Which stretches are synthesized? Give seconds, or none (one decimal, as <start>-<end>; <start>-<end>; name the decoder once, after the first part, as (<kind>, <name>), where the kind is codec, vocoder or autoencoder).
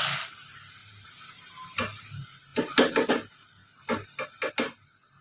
0.8-1.5 (vocoder, BigVGAN v2)